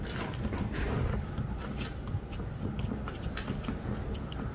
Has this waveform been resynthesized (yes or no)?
yes